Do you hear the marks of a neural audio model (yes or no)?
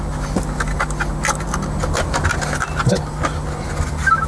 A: no